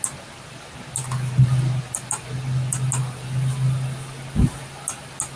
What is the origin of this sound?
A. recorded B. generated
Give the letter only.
A